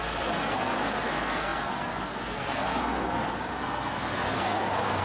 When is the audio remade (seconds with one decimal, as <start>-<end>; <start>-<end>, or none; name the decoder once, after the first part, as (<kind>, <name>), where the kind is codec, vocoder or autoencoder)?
0.0-5.0 (codec, SNAC)